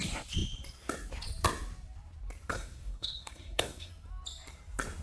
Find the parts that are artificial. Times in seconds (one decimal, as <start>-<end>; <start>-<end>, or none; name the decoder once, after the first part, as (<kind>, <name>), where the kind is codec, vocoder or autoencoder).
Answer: 2.5-3.9 (codec, SNAC)